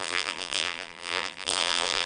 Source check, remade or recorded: remade